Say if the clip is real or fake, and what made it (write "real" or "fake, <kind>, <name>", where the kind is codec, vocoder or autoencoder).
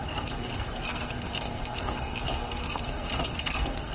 fake, codec, SNAC